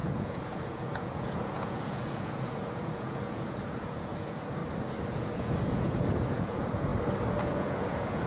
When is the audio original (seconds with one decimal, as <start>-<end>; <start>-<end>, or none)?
4.6-5.1; 6.9-7.4